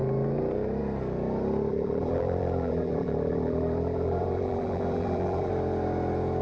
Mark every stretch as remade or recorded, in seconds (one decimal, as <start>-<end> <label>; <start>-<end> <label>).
0.0-1.7 recorded; 1.7-5.5 remade; 5.5-6.4 recorded